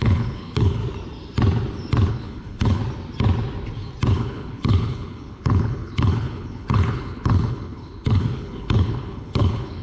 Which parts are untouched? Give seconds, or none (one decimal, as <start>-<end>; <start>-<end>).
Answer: 0.8-2.1; 2.8-4.1